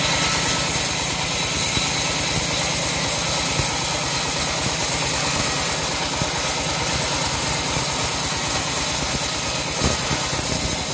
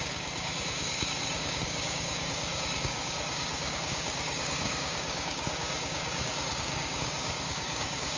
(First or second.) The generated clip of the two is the second